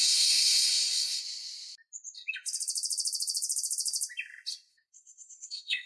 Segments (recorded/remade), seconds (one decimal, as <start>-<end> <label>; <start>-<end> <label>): 0.0-1.2 remade; 1.2-4.7 recorded; 4.7-5.9 remade